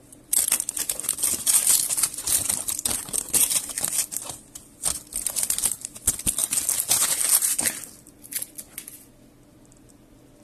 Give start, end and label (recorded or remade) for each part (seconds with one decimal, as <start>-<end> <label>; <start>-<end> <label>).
0.0-10.4 recorded